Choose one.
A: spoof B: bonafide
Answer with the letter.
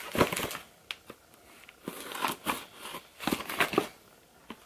B